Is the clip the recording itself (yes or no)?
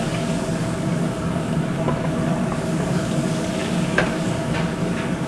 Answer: no